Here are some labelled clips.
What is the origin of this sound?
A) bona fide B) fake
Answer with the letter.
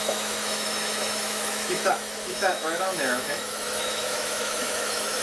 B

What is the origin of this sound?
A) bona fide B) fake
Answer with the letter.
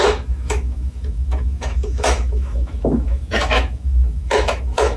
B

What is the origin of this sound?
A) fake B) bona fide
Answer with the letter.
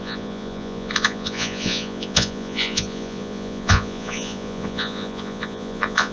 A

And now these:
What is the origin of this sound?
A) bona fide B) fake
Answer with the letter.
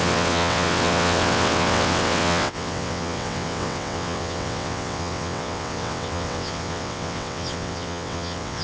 B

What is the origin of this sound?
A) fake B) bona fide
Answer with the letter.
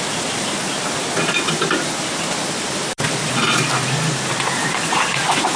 B